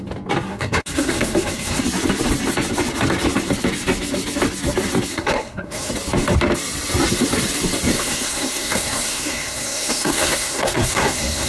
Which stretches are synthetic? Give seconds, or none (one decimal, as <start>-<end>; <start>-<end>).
0.5-1.8; 5.1-5.9; 7.9-11.5